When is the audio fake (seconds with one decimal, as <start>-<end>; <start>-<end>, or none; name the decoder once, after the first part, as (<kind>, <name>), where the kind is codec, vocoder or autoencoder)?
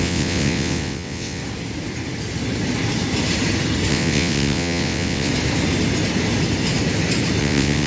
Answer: 0.0-1.4 (vocoder, WaveNeXt); 3.9-5.3; 7.4-7.9